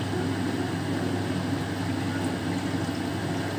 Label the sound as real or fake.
real